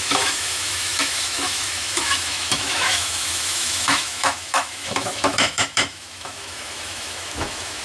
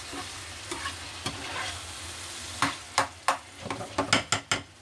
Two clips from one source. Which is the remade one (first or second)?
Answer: first